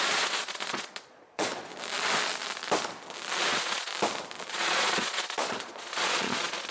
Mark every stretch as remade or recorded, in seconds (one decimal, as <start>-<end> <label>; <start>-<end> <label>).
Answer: 0.0-1.7 remade; 1.7-3.5 recorded; 3.5-3.9 remade; 3.9-4.5 recorded; 4.5-6.7 remade